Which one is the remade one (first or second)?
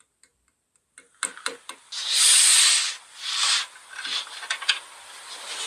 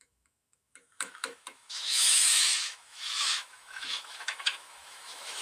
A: second